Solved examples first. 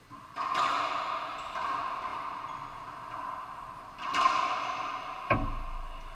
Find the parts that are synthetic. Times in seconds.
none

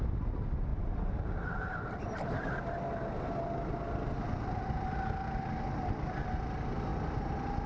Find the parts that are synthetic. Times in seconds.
none

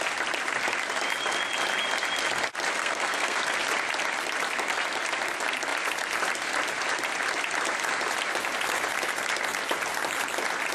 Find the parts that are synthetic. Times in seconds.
2.8-3.5 (codec, SNAC)

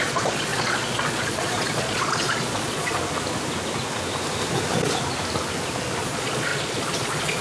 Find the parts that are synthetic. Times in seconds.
0.0-3.0 (vocoder, Vocos); 6.0-7.4

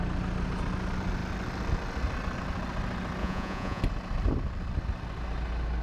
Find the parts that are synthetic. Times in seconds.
3.2-3.8 (vocoder, Vocos)